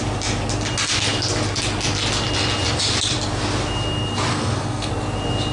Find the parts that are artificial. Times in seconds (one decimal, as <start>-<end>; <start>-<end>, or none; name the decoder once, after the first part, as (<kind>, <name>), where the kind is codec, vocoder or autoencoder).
4.3-4.9 (codec, SNAC)